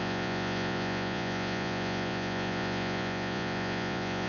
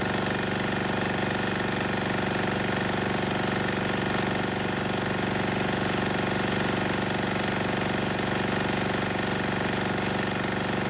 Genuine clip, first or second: second